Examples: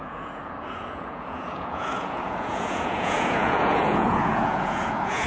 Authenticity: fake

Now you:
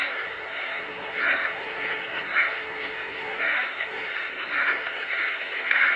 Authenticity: fake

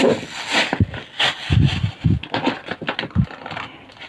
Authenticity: real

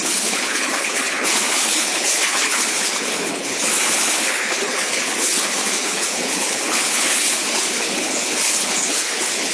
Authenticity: fake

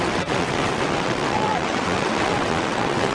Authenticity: fake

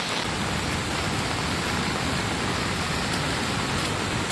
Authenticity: real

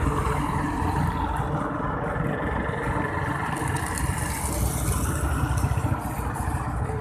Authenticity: real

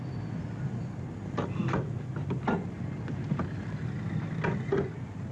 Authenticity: real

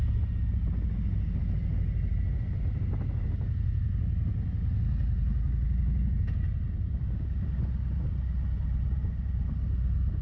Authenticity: real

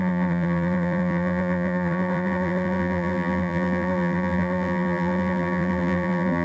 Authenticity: fake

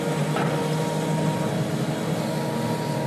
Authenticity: real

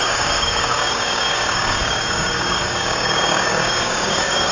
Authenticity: fake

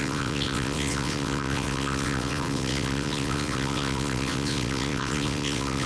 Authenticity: fake